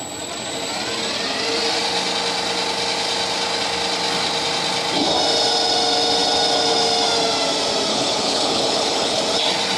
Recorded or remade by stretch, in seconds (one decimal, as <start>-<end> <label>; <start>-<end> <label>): 0.0-7.9 recorded; 7.9-9.2 remade; 9.2-9.8 recorded